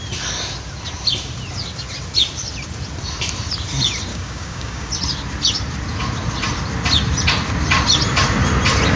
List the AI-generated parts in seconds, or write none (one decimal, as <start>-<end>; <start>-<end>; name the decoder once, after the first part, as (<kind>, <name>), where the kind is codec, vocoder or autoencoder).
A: 4.1-4.9 (codec, DAC)